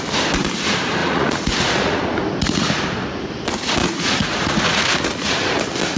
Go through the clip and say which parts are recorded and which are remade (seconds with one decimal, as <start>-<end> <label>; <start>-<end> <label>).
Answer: 0.0-1.0 recorded; 1.0-2.0 remade; 2.0-3.8 recorded; 3.8-5.6 remade; 5.6-6.0 recorded